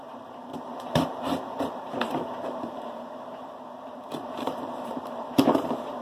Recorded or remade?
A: remade